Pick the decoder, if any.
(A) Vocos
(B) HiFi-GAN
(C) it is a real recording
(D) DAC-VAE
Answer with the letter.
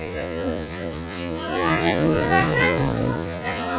A